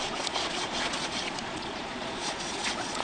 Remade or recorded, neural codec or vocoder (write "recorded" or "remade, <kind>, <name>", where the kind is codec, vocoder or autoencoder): remade, vocoder, Vocos